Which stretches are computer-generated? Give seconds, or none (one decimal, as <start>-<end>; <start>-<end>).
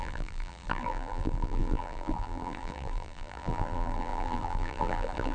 0.0-5.3